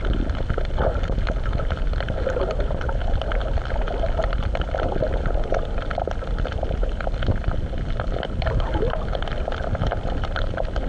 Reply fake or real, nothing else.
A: fake